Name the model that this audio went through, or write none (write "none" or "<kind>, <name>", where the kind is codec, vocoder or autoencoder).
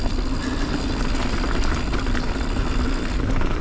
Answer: none